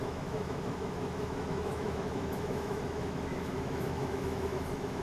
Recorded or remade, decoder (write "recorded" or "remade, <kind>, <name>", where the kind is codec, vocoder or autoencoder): remade, autoencoder, DAC-VAE